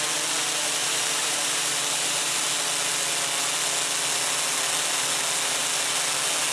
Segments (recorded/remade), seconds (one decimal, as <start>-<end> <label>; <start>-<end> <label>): 0.0-0.8 recorded; 0.8-2.5 remade; 2.5-6.5 recorded